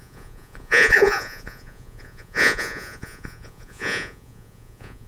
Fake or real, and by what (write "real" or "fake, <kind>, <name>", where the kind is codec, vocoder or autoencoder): fake, vocoder, Vocos